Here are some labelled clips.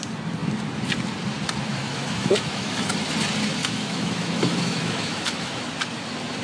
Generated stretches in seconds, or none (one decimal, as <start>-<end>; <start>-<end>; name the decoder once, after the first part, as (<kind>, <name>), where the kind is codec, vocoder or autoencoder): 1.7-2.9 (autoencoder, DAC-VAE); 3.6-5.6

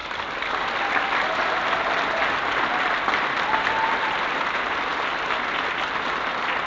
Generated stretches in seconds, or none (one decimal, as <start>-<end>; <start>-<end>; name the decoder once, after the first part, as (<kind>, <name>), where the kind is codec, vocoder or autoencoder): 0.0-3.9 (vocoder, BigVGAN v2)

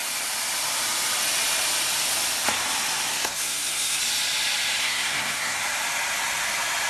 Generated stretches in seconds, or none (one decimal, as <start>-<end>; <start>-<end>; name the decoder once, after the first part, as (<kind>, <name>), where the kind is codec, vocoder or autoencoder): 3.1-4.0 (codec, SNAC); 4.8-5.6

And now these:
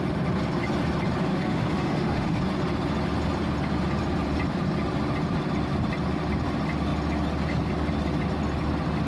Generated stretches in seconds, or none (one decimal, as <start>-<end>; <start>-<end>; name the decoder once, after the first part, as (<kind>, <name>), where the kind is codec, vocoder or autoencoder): 1.3-2.4 (autoencoder, DAC-VAE)

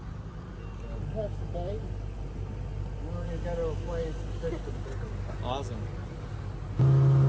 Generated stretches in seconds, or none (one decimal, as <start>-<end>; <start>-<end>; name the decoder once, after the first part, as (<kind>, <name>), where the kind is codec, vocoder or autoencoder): none